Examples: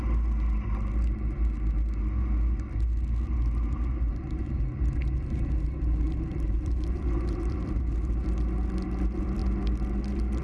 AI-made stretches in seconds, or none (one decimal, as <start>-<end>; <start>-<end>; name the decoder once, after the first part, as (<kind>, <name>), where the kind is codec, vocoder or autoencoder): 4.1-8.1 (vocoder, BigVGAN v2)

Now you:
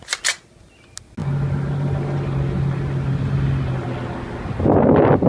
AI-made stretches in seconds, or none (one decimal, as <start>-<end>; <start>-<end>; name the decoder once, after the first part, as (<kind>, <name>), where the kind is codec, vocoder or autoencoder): none

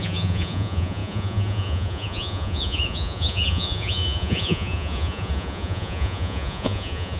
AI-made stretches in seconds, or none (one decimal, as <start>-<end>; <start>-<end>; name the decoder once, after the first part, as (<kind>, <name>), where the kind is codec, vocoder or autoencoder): 0.0-7.2 (vocoder, Vocos)

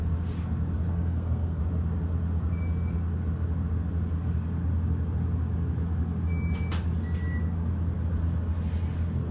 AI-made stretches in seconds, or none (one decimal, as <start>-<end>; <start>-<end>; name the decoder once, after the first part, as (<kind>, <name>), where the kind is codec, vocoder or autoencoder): 0.9-1.6 (codec, SNAC)

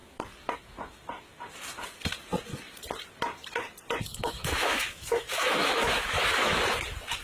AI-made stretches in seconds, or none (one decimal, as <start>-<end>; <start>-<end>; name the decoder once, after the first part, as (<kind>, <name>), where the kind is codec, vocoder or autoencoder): 4.1-6.6 (autoencoder, DAC-VAE)

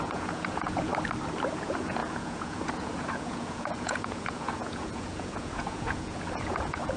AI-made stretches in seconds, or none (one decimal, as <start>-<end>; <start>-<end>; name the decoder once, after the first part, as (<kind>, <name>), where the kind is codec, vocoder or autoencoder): 0.0-0.9 (vocoder, Vocos); 1.5-7.0

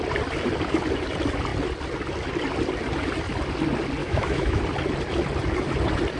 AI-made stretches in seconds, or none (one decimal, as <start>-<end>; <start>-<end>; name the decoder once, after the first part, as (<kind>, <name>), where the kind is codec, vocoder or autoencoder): 4.0-4.6 (autoencoder, DAC-VAE)